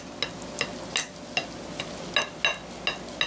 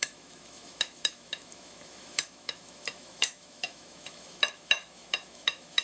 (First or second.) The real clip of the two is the first